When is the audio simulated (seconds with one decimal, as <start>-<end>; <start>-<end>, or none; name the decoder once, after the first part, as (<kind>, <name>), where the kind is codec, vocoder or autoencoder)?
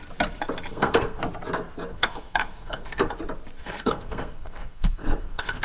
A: 0.7-1.2 (codec, SNAC); 1.9-3.1; 3.6-5.6